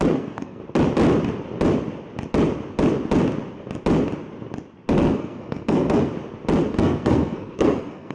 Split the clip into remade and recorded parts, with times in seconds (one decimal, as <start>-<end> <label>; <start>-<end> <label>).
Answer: 0.0-0.6 remade; 0.6-4.9 recorded; 4.9-6.1 remade; 6.1-6.7 recorded; 6.7-8.1 remade